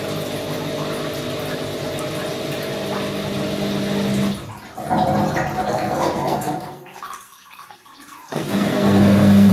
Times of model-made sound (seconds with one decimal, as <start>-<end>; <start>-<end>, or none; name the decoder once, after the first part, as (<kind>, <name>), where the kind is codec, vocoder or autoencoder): 5.5-9.5 (codec, SNAC)